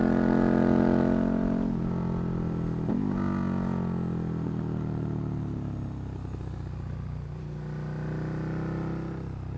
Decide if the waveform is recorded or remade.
recorded